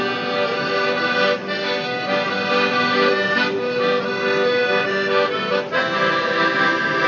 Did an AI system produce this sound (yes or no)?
no